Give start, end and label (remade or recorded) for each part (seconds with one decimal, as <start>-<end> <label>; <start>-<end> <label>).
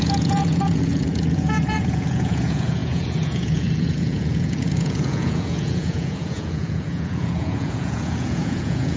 0.0-9.0 remade